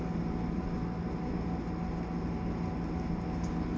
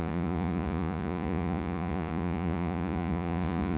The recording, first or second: first